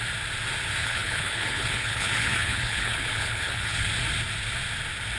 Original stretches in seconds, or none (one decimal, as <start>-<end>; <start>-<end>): 0.0-0.8; 3.9-5.2